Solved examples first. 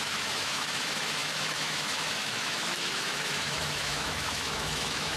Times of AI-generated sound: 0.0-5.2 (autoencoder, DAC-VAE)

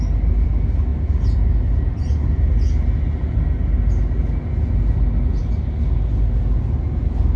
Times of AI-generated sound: none

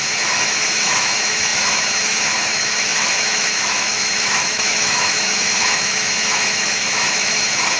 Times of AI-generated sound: 0.0-7.8 (autoencoder, DAC-VAE)

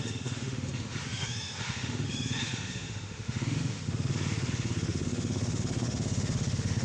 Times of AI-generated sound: 0.0-6.8 (autoencoder, DAC-VAE)

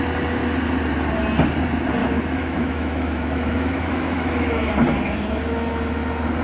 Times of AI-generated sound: 2.0-4.7 (autoencoder, DAC-VAE)

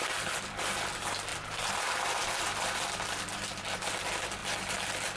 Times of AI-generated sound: none

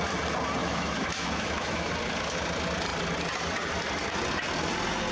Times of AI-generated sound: 0.6-1.9 (autoencoder, DAC-VAE)

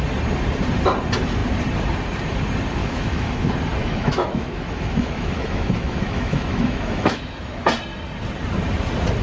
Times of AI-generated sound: 2.8-3.3 (autoencoder, DAC-VAE); 3.8-7.6